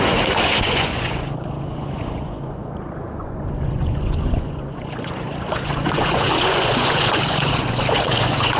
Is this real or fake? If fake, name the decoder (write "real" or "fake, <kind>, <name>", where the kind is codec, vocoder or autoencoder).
fake, vocoder, Vocos